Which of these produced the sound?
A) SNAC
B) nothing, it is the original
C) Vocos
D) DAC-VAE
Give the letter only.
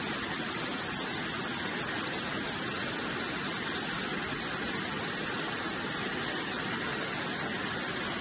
B